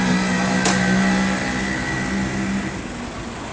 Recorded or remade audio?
recorded